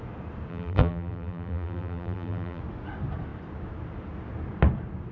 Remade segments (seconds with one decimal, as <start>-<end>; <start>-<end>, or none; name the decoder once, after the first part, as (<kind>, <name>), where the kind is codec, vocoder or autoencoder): 0.5-2.6 (vocoder, BigVGAN v2)